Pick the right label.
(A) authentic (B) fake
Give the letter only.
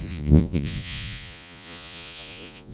B